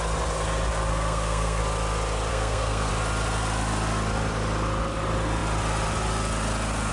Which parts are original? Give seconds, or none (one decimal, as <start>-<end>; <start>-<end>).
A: 0.0-0.9; 1.6-2.3; 2.9-6.9